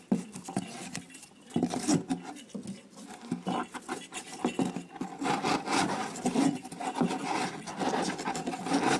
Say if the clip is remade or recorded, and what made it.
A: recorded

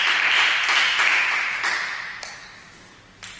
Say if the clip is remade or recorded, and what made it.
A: recorded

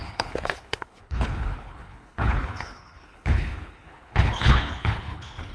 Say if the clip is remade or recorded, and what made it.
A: remade, codec, HILCodec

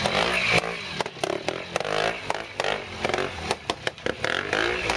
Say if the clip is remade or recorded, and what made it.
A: recorded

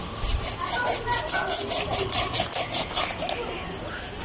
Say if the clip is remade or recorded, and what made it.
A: recorded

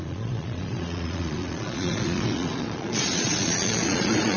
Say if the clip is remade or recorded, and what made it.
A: remade, vocoder, Vocos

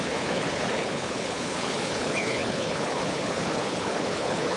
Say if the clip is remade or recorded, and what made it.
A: remade, codec, HILCodec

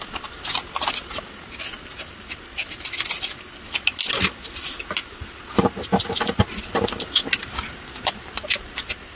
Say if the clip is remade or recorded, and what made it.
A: recorded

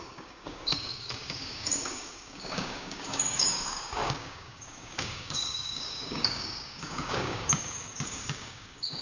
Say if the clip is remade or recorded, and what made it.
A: remade, codec, DAC